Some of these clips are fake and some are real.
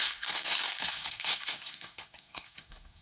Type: fake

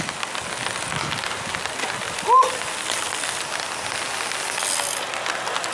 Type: real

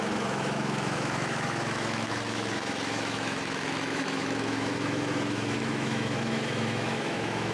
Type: fake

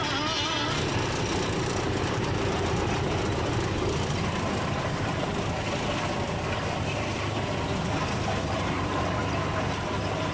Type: real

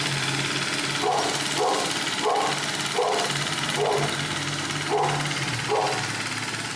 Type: real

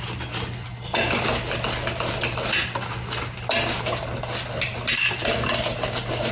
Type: real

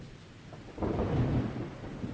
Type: fake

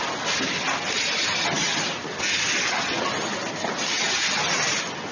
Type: real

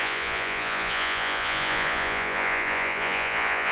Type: fake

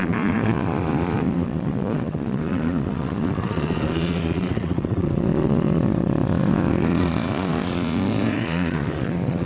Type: fake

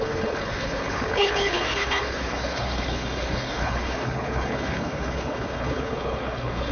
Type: fake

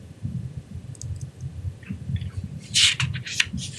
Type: real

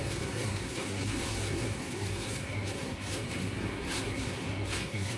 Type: fake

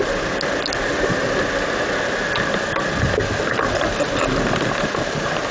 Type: real